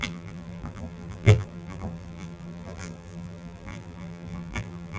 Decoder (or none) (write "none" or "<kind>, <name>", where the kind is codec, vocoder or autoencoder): vocoder, BigVGAN v2